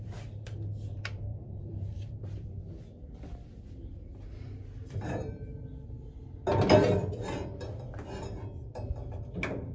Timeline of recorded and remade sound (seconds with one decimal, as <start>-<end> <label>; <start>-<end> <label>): 0.0-1.3 recorded; 1.3-2.6 remade; 2.6-9.7 recorded